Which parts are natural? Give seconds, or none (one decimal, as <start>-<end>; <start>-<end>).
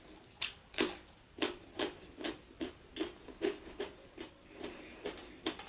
0.0-3.3; 3.8-5.7